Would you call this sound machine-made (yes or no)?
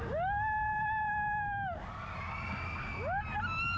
no